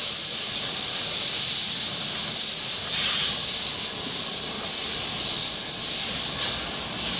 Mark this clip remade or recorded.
recorded